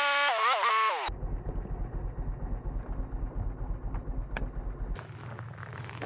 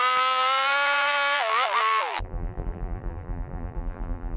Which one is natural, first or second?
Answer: first